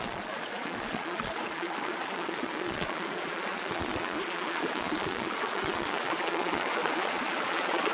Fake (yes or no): yes